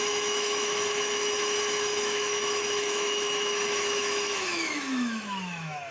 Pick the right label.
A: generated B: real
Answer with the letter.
A